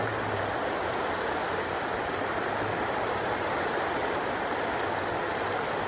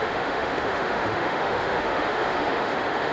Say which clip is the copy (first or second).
second